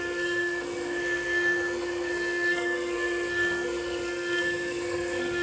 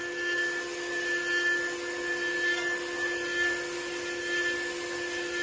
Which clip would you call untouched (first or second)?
second